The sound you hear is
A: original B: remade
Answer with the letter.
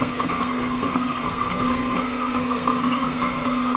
B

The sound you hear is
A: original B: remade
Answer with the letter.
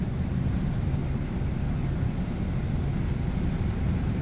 B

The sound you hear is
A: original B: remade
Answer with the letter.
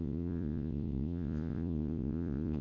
B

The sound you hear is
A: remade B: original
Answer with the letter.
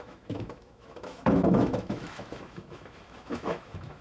A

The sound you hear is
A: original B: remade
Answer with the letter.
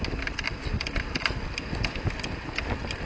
A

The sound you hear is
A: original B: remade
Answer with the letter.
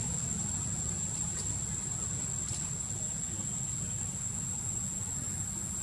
A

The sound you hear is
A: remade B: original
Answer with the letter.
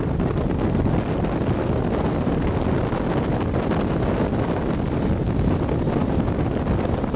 B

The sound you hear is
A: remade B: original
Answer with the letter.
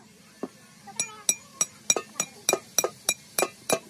B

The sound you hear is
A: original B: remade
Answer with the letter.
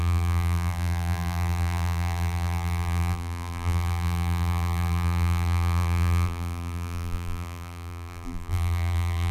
B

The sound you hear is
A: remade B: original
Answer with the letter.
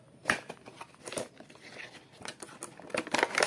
B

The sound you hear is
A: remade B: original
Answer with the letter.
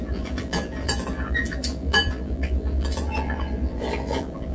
A